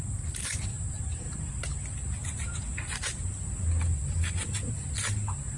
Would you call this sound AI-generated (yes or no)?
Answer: no